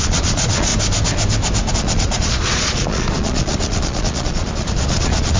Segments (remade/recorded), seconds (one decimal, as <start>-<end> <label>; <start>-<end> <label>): 0.0-0.7 remade; 0.7-1.7 recorded; 1.7-5.4 remade